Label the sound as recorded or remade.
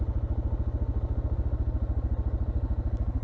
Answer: recorded